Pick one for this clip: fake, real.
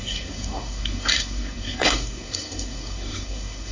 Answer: fake